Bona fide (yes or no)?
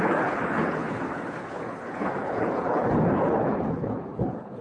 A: no